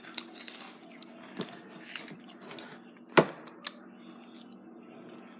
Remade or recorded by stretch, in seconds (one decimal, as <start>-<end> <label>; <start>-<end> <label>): 0.0-5.4 recorded